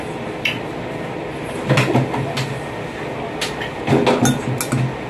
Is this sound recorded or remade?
recorded